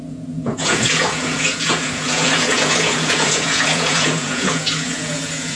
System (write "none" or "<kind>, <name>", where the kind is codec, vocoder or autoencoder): vocoder, Vocos